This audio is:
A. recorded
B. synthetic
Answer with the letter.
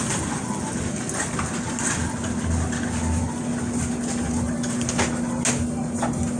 A